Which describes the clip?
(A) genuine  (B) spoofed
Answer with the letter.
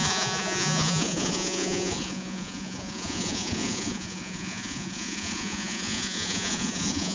B